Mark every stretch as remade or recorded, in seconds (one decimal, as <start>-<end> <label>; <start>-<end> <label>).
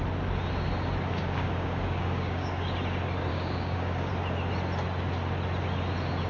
0.0-1.2 recorded; 1.2-2.7 remade; 2.7-3.3 recorded; 3.3-4.1 remade; 4.1-6.3 recorded